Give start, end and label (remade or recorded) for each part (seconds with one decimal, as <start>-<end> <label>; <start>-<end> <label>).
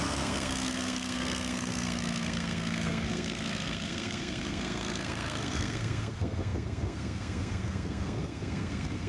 0.0-9.1 remade